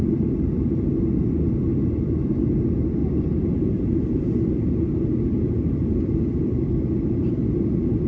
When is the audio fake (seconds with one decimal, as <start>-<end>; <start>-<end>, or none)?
0.0-1.2; 3.0-5.0